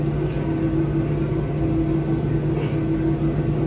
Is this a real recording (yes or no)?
yes